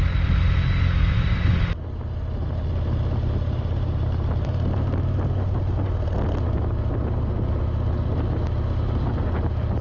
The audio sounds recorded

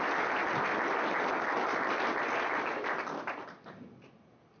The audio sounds recorded